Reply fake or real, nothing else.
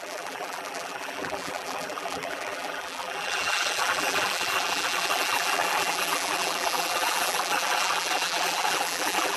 fake